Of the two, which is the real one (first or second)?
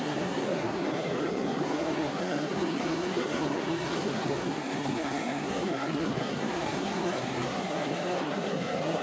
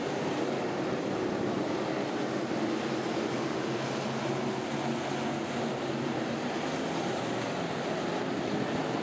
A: second